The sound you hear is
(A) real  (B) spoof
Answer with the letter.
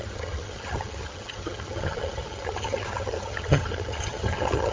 B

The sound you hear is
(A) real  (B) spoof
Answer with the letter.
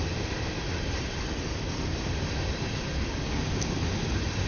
A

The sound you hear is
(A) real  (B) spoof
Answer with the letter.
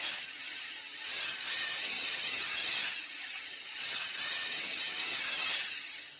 B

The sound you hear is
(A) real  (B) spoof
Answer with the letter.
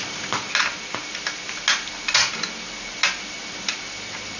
A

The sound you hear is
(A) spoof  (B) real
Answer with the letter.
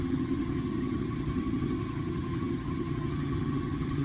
A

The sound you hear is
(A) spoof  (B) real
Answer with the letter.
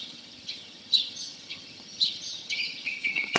A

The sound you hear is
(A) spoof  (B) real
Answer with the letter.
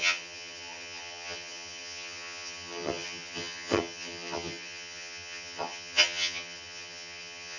A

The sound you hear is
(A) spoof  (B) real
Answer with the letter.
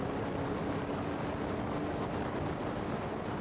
B